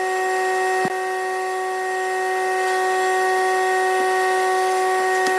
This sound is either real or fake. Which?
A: real